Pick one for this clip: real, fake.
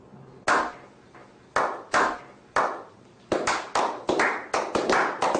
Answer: real